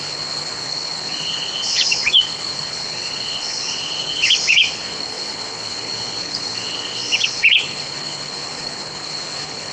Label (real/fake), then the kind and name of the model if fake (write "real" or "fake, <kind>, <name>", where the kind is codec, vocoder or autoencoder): fake, codec, HILCodec